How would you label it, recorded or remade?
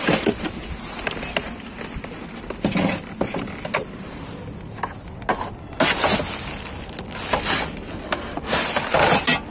recorded